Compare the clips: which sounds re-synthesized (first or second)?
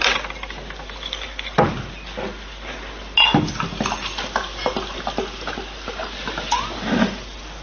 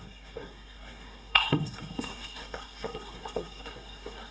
second